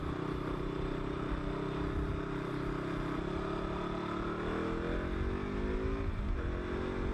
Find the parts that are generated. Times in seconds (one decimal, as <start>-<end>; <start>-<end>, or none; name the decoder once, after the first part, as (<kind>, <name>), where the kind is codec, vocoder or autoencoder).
0.0-1.3 (vocoder, BigVGAN v2)